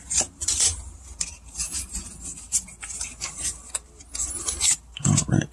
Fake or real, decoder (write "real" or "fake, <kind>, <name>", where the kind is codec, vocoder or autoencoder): fake, vocoder, BigVGAN v2